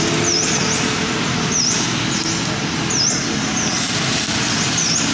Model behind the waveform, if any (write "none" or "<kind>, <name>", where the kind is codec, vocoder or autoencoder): none